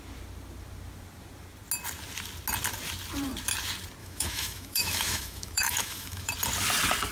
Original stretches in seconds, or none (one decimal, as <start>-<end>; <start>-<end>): 0.0-4.0; 6.3-7.1